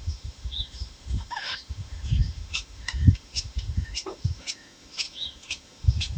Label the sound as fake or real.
fake